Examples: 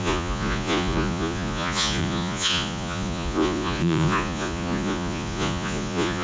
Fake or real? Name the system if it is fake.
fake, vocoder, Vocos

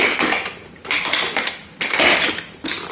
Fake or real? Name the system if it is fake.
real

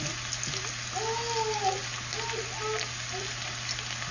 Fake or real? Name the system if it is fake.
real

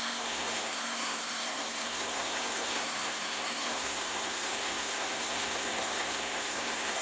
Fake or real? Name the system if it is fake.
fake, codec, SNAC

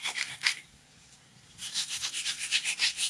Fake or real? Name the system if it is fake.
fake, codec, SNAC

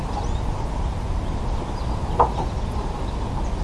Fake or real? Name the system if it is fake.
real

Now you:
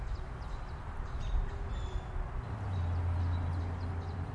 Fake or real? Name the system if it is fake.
real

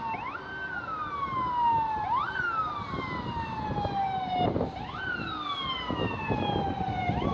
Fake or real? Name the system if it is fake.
real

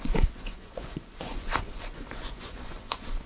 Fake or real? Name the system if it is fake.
fake, vocoder, Vocos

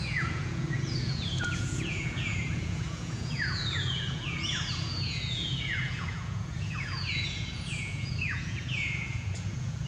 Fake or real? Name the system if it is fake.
fake, vocoder, Vocos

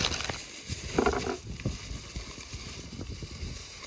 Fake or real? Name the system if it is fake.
real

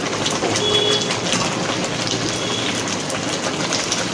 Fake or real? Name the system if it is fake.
real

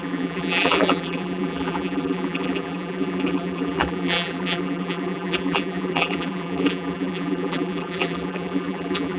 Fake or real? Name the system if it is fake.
fake, vocoder, BigVGAN v2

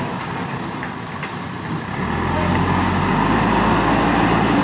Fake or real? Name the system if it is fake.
real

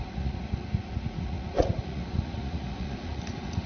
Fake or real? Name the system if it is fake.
fake, vocoder, Vocos